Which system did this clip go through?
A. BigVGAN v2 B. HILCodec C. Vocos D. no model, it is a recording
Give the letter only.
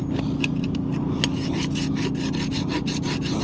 D